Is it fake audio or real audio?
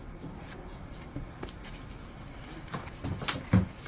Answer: real